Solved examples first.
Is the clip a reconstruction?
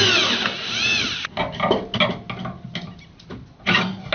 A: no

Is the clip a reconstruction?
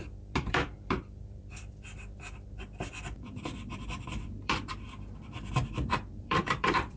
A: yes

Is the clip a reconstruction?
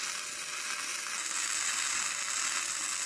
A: no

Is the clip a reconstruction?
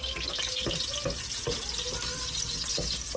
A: no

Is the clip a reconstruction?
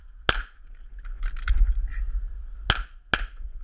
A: no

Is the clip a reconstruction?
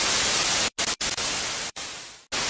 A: no